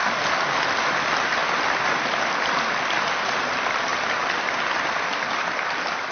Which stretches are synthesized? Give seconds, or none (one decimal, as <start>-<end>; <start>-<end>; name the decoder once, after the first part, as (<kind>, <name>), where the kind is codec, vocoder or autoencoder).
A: 0.8-1.4 (vocoder, BigVGAN v2); 2.6-3.9; 5.3-6.1